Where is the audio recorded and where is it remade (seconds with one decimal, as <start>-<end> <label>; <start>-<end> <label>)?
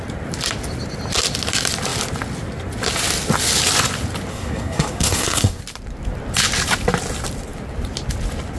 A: 0.0-4.3 recorded; 4.3-5.6 remade; 5.6-8.6 recorded